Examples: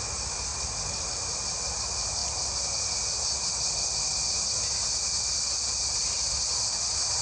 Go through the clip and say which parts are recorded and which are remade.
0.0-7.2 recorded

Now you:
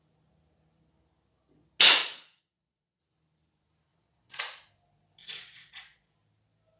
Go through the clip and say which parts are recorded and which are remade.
0.0-2.0 recorded; 2.0-3.0 remade; 3.0-3.9 recorded; 3.9-4.4 remade; 4.4-5.2 recorded; 5.2-6.1 remade; 6.1-6.8 recorded

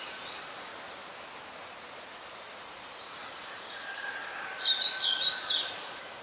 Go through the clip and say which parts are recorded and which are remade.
0.0-0.7 remade; 0.7-2.0 recorded; 2.0-4.2 remade; 4.2-4.9 recorded; 4.9-6.2 remade